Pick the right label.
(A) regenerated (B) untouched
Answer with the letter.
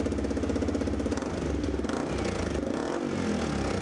B